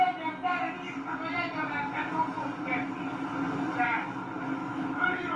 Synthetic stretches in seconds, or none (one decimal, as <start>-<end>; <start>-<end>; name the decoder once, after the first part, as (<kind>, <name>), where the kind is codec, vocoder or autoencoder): 4.6-5.4 (autoencoder, DAC-VAE)